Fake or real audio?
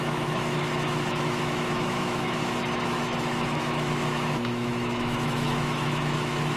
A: fake